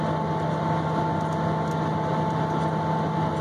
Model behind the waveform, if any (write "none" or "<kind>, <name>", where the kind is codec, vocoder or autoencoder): none